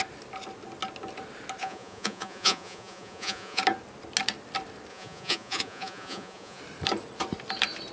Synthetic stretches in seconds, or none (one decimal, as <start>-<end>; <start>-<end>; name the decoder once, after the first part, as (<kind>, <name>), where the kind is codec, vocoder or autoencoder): 1.6-3.6 (vocoder, Vocos); 4.9-6.6